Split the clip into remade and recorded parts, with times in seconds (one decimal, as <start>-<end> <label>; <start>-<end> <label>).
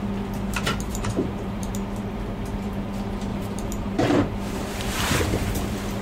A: 0.0-0.9 recorded; 0.9-1.7 remade; 1.7-3.3 recorded; 3.3-5.4 remade; 5.4-6.0 recorded